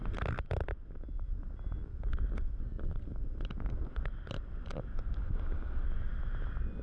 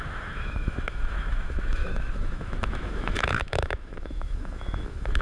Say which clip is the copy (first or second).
second